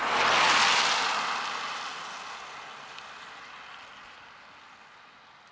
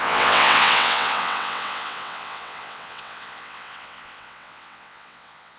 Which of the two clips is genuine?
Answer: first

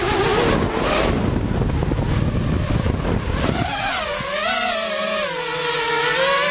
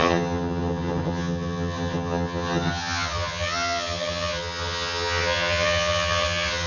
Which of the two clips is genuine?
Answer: first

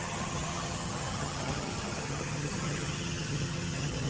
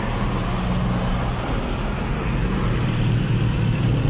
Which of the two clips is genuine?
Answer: second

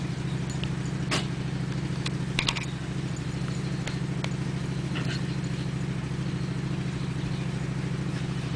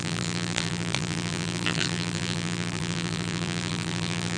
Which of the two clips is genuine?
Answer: first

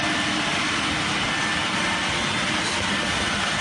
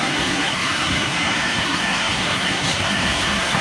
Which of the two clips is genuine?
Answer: first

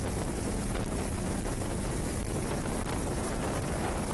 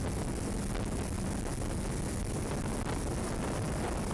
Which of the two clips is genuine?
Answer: second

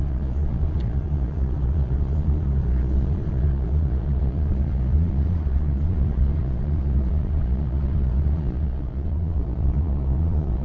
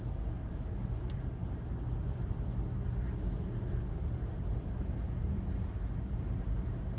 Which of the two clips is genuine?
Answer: second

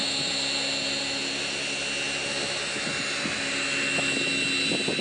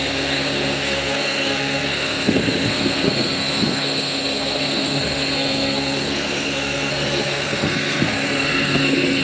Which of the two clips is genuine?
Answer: first